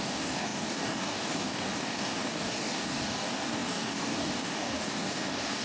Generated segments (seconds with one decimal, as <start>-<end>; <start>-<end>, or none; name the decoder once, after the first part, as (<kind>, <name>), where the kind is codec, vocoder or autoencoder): 0.0-5.6 (codec, DAC)